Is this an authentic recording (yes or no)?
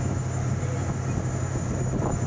yes